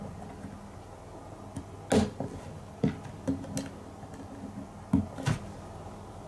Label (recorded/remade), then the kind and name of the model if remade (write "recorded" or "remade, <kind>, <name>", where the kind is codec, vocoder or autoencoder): recorded